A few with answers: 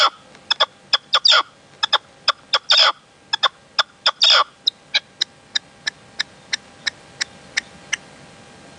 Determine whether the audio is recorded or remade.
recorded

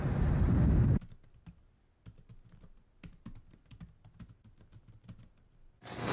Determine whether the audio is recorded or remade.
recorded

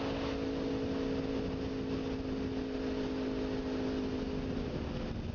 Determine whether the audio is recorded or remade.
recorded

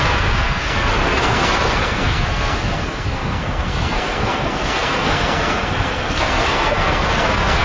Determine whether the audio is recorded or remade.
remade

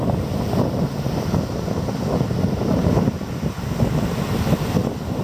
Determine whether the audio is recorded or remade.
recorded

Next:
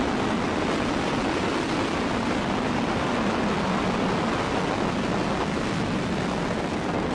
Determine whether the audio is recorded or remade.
recorded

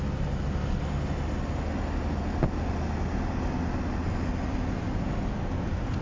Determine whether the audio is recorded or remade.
recorded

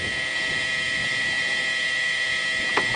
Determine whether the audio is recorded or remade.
recorded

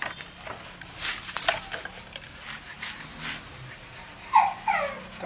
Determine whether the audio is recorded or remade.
recorded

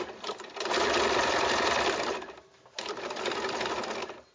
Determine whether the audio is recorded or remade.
recorded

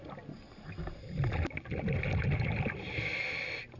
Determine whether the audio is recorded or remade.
recorded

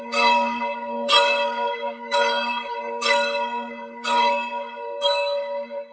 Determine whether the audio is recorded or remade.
remade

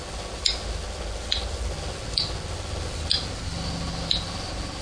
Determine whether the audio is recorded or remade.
recorded